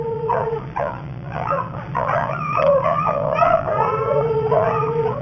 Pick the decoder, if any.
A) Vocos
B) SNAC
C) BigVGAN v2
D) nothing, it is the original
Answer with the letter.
A